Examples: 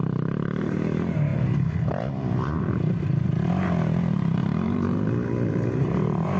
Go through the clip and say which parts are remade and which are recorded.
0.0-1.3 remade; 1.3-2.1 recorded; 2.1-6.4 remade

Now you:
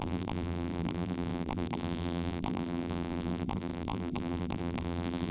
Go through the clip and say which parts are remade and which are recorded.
0.0-5.3 remade

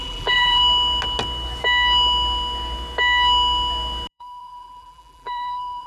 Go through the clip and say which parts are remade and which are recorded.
0.0-0.6 remade; 0.6-4.1 recorded; 4.1-5.9 remade